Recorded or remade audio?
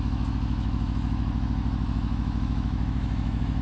remade